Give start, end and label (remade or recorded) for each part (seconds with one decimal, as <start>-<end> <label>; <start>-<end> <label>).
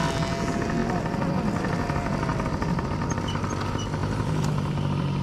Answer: 0.0-5.2 recorded